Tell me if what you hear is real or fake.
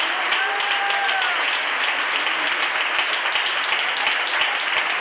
real